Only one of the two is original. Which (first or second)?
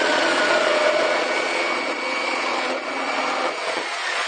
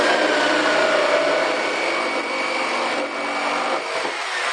second